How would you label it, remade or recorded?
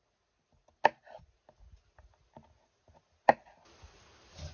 recorded